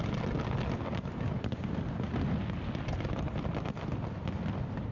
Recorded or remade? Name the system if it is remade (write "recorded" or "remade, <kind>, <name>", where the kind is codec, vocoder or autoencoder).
recorded